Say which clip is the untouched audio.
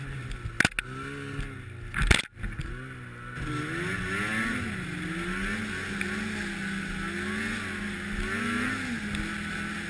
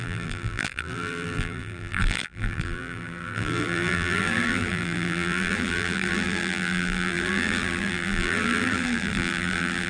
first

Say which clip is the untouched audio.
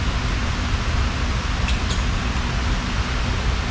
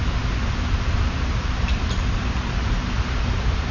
first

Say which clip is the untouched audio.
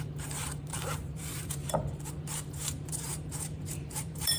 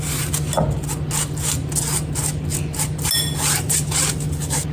second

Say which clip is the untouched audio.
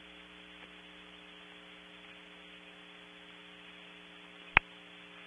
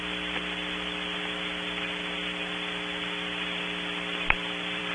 first